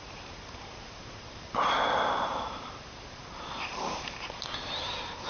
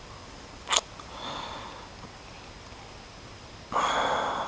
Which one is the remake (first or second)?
first